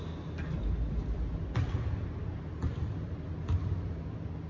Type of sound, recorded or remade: recorded